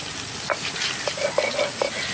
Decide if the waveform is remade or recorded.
recorded